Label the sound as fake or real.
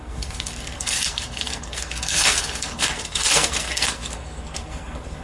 fake